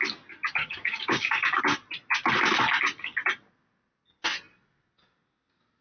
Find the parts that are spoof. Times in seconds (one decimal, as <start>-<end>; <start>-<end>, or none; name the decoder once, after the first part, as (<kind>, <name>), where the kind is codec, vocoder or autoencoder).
0.6-1.6 (codec, DAC)